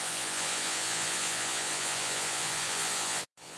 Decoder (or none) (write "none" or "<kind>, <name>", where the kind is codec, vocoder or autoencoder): vocoder, Vocos